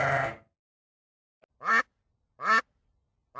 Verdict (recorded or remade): recorded